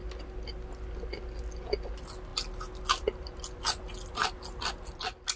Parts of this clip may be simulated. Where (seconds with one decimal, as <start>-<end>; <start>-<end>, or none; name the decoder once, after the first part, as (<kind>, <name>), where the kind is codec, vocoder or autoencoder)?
none